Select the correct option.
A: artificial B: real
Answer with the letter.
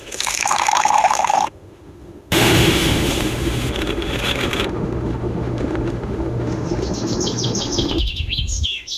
A